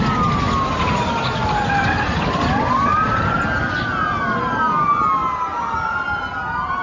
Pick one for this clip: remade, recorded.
recorded